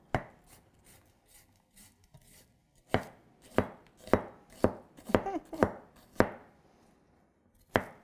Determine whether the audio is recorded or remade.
recorded